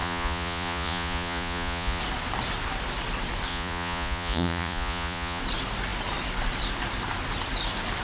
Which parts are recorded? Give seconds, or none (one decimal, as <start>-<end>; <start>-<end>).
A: 2.0-3.5; 5.4-8.0